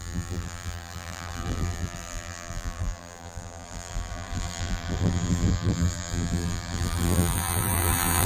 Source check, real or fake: fake